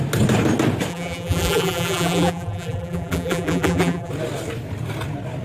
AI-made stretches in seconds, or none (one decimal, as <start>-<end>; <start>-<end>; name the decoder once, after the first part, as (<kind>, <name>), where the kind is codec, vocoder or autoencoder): 0.9-4.1 (vocoder, BigVGAN v2)